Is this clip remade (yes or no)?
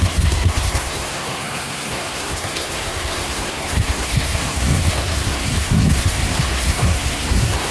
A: yes